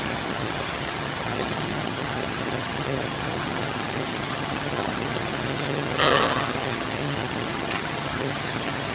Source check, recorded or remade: remade